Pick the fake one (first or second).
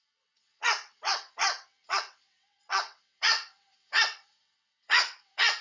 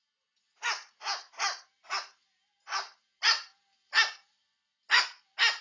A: first